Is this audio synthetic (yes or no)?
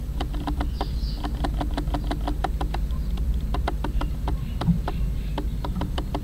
no